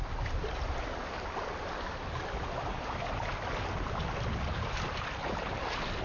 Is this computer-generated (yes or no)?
no